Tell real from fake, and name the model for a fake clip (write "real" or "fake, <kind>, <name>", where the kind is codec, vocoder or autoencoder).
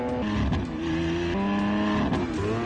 real